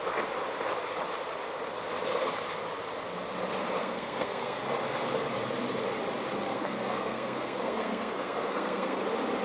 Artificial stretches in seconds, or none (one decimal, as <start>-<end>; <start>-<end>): 3.8-4.6; 6.5-9.0